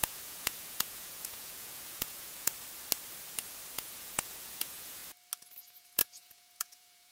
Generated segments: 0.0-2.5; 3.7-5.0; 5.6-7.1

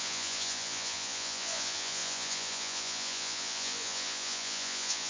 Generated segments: 0.0-5.1

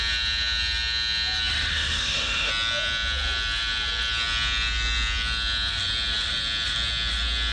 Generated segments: 1.5-2.5

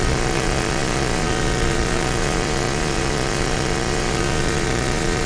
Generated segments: 0.0-5.3

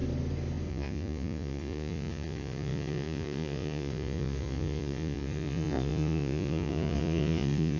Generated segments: 0.7-7.8

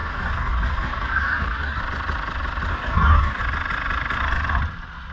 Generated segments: 0.0-1.8; 2.7-3.4

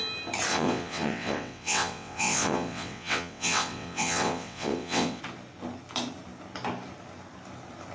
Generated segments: 0.5-5.2

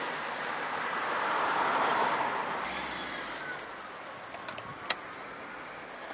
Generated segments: none